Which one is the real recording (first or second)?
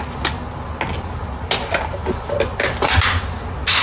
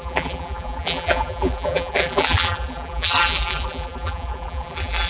first